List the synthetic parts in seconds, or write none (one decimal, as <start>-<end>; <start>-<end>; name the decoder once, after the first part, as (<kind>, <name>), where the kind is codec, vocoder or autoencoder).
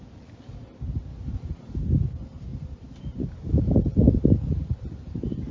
none